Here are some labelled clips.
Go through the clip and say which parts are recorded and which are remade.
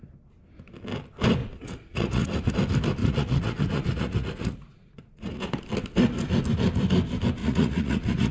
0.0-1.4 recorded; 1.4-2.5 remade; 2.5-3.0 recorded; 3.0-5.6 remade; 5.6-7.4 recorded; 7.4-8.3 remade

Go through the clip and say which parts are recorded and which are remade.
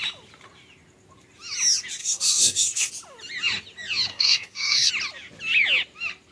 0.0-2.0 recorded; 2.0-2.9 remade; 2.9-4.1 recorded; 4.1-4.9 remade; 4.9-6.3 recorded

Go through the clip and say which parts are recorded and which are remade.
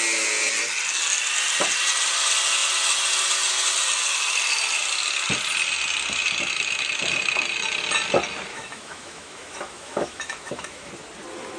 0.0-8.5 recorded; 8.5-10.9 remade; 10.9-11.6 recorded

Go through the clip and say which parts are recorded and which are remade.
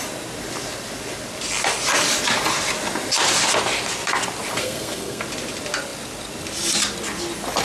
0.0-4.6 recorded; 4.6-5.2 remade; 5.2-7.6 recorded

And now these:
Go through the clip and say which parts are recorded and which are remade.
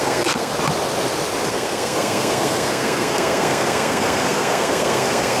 0.0-0.5 remade; 0.5-1.5 recorded; 1.5-5.4 remade